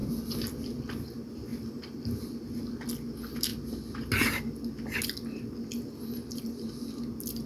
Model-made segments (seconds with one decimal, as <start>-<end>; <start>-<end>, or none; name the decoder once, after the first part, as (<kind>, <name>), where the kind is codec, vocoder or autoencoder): 0.0-0.9 (vocoder, BigVGAN v2); 1.5-2.4